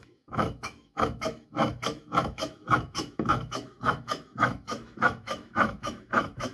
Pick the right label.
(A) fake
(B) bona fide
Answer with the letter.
A